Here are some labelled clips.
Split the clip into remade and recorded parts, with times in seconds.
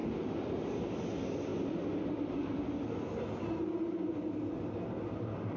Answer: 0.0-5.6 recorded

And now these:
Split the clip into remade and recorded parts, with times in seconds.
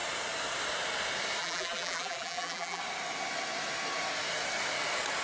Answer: 0.0-1.4 recorded; 1.4-2.8 remade; 2.8-5.2 recorded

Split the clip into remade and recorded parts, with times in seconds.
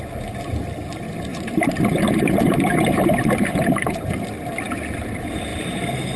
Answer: 0.0-1.3 recorded; 1.3-4.1 remade; 4.1-5.5 recorded; 5.5-6.2 remade